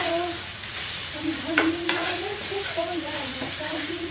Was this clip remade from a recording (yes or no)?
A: yes